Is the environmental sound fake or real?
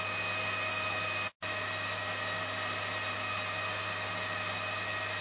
real